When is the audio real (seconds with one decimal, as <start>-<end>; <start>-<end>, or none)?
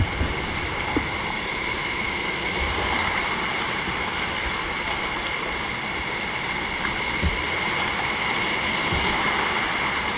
0.0-1.8; 2.7-10.2